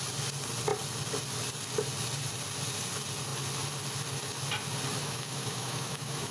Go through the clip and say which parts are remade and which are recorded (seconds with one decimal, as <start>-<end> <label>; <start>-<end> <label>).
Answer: 0.0-5.0 recorded; 5.0-6.3 remade